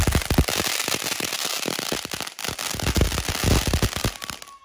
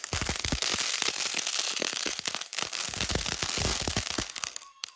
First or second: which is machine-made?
second